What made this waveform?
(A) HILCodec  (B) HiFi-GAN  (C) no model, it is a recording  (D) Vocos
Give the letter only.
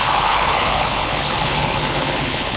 A